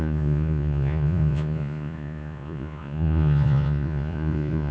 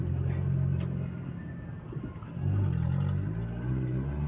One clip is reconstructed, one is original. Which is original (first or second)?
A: second